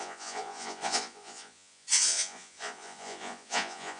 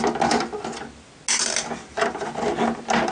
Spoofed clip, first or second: first